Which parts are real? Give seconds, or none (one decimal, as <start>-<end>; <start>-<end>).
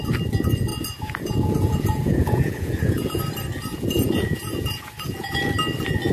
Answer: 0.0-0.7; 3.2-3.7; 5.5-6.1